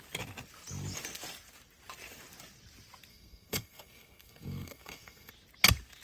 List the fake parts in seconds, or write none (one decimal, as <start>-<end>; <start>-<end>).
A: 3.1-5.3